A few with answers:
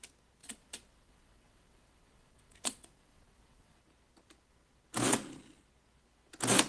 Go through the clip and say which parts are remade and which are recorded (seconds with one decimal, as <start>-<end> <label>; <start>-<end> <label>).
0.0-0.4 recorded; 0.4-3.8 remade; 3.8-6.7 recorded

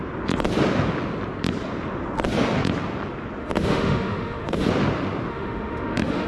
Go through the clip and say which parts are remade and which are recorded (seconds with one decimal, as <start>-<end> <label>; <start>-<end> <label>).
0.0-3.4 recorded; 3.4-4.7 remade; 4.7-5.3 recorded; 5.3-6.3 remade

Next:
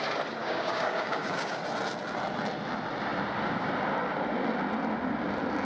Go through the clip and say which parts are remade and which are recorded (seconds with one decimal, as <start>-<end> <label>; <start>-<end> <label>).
0.0-0.4 recorded; 0.4-1.6 remade; 1.6-5.6 recorded

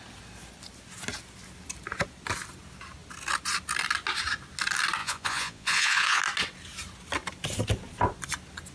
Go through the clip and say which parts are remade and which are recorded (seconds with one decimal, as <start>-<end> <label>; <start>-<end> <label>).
0.0-5.0 recorded; 5.0-6.2 remade; 6.2-8.7 recorded